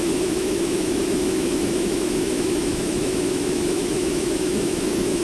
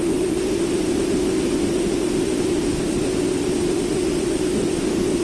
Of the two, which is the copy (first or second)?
first